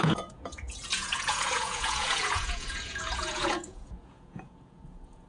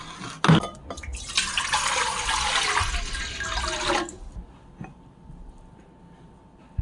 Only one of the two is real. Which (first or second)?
second